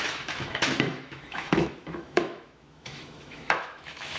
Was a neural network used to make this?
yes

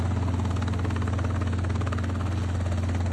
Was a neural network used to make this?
no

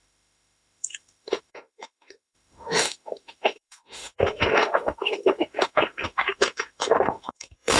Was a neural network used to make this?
yes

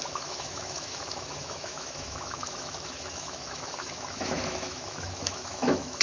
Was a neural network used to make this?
yes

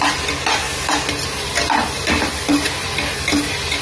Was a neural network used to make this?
no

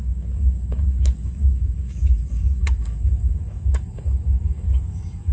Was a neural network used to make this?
yes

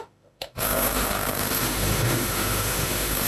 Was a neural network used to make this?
yes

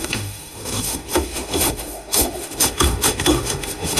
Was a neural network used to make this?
yes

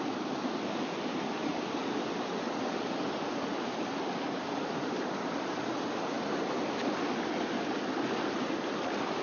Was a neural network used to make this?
no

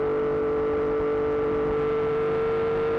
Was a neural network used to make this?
no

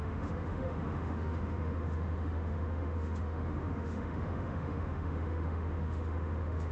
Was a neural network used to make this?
yes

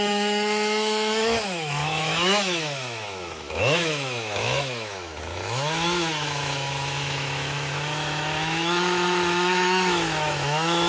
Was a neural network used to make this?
yes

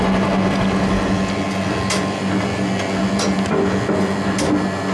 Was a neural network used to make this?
no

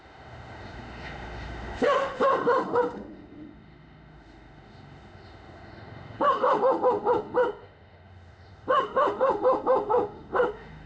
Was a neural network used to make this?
yes